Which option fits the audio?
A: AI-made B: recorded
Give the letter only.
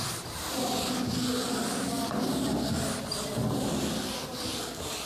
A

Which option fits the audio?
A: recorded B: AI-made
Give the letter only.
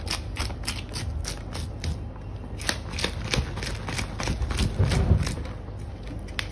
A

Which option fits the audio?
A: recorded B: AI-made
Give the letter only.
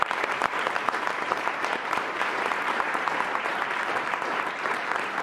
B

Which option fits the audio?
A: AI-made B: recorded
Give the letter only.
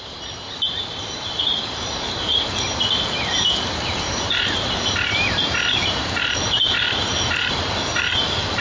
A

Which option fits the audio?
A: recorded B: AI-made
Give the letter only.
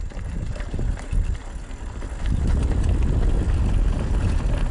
A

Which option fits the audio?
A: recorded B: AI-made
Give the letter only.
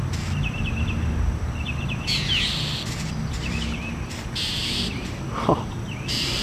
B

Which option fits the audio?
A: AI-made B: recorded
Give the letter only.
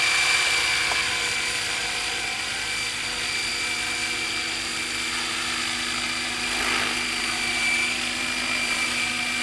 B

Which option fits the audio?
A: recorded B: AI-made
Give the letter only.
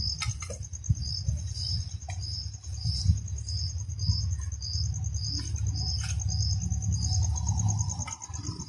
A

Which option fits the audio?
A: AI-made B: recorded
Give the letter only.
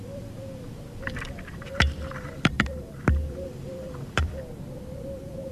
A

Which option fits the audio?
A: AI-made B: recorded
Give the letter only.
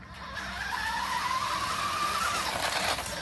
B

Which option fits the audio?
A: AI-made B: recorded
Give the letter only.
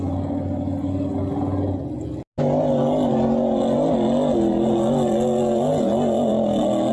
B